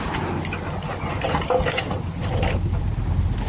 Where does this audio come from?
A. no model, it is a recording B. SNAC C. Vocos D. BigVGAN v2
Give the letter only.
A